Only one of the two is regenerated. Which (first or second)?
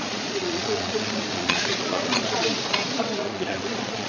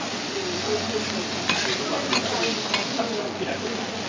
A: first